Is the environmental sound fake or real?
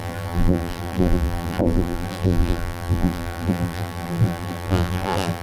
fake